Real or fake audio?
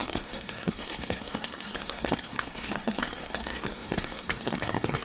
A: fake